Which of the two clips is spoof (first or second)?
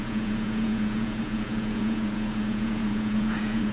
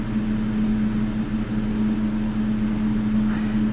first